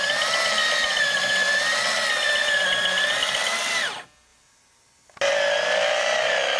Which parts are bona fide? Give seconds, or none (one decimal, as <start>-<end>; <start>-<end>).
0.0-6.6